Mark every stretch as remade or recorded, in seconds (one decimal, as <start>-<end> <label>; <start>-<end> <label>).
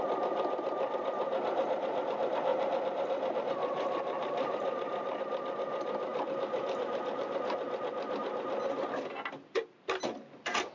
0.0-2.5 recorded; 2.5-5.2 remade; 5.2-10.7 recorded